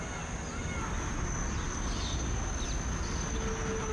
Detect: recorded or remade recorded